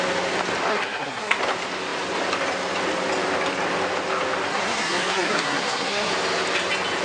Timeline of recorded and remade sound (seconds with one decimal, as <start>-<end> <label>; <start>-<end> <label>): 0.0-0.7 recorded; 0.7-1.4 remade; 1.4-4.5 recorded; 4.5-6.1 remade; 6.1-7.0 recorded